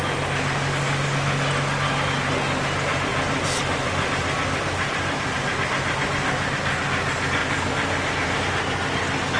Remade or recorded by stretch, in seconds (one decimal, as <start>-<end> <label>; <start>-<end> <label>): 0.0-3.1 recorded; 3.1-5.4 remade; 5.4-7.4 recorded; 7.4-8.4 remade; 8.4-9.4 recorded